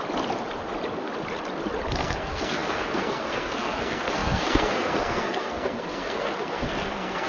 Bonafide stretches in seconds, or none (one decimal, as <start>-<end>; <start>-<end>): 0.0-1.9